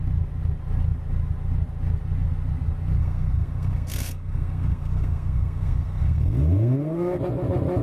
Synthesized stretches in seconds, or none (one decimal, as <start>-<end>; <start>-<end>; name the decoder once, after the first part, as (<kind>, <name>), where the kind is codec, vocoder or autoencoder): 3.0-7.2 (codec, SNAC)